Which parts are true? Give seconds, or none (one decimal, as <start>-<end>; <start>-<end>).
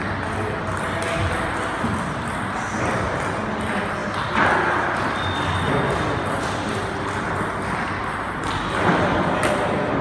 0.0-10.0